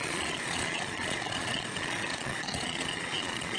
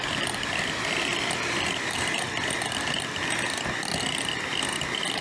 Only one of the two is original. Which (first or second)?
second